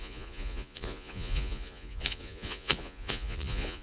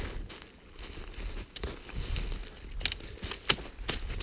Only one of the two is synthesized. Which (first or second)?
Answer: first